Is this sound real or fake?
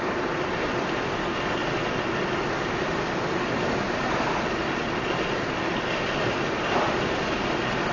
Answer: real